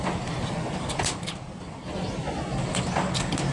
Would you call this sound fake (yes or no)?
no